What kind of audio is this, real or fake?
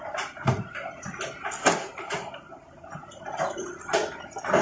real